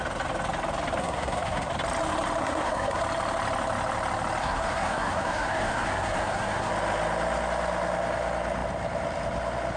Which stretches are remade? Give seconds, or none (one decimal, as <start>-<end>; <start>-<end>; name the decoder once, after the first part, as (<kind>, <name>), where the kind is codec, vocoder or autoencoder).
1.0-1.7 (codec, SNAC); 2.4-3.0; 4.4-6.7